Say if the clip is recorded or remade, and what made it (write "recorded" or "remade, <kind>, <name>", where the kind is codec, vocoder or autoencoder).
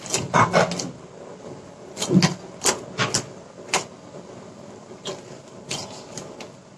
recorded